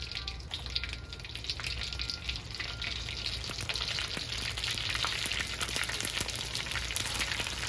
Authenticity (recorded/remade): recorded